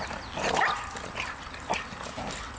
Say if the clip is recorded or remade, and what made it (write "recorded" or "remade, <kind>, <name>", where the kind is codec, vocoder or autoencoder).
recorded